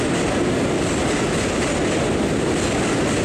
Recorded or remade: recorded